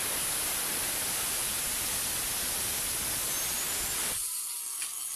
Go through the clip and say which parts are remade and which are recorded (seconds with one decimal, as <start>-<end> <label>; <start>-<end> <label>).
0.0-5.2 recorded